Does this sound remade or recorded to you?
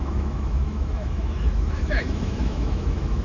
remade